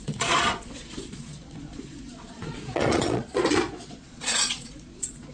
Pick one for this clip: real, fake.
fake